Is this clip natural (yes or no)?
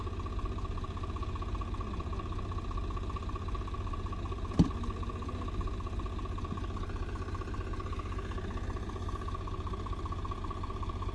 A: yes